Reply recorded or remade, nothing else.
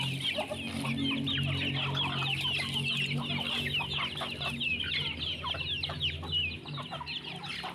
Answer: recorded